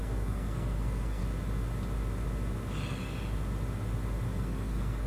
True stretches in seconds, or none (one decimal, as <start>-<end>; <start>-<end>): 1.2-4.3